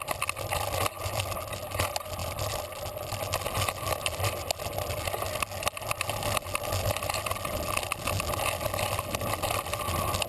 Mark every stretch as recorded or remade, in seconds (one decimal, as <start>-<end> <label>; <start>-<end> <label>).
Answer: 0.0-10.3 recorded